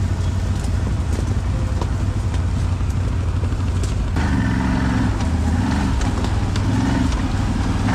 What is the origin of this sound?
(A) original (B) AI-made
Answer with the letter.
A